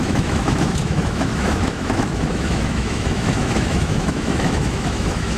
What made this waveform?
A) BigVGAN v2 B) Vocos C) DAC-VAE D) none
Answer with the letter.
C